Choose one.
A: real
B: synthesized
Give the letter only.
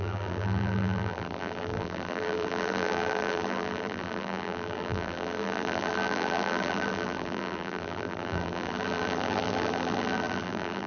B